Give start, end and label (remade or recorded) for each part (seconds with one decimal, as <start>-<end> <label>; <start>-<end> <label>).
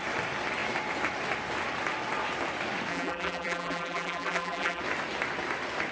0.0-2.9 recorded; 2.9-4.8 remade; 4.8-5.9 recorded